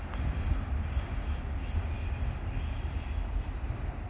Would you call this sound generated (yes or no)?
no